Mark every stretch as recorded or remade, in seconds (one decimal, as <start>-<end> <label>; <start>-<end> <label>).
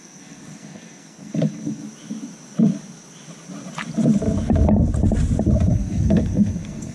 0.0-1.8 remade; 1.8-5.7 recorded; 5.7-6.9 remade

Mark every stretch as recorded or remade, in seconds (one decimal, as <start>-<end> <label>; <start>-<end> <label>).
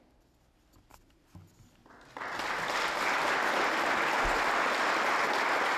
0.0-5.8 recorded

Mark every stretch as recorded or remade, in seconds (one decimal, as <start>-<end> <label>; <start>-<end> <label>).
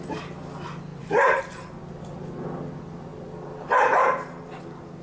0.0-0.9 recorded; 0.9-1.4 remade; 1.4-5.0 recorded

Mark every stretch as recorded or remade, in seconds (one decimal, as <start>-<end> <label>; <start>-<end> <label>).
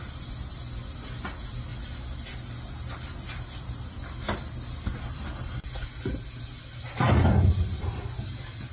0.0-8.7 recorded